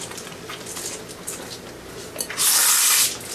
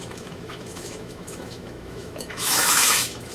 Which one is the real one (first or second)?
first